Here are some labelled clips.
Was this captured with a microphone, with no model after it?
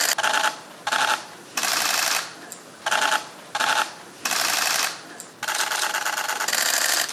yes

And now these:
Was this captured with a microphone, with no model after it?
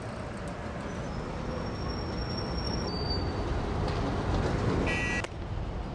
yes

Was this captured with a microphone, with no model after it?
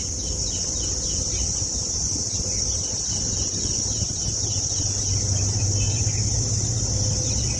yes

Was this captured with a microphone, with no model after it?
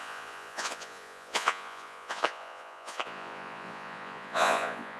no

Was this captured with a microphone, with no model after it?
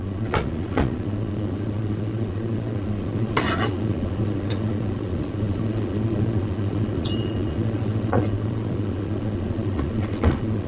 no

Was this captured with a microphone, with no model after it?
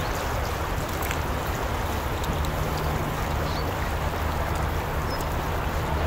yes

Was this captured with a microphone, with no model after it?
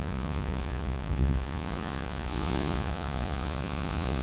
no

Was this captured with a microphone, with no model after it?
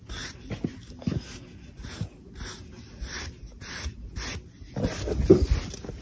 yes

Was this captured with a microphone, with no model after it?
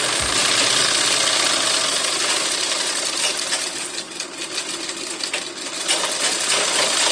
yes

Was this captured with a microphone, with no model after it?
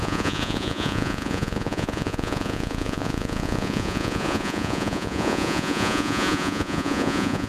no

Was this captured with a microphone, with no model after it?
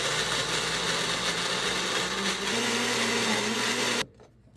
yes